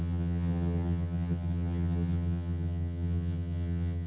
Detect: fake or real fake